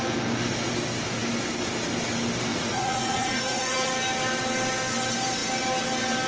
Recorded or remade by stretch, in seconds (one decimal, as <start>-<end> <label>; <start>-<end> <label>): 0.0-2.5 recorded; 2.5-3.9 remade; 3.9-6.3 recorded